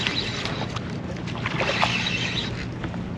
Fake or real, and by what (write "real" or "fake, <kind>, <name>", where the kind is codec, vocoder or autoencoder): real